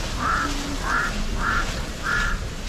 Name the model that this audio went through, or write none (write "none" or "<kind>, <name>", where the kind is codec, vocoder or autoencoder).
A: none